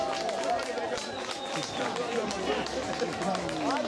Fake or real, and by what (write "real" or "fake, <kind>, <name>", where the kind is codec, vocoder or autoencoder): real